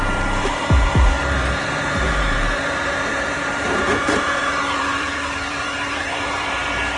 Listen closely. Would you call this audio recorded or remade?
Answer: remade